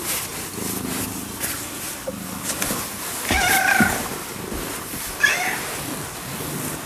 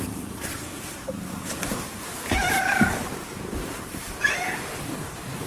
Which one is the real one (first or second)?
first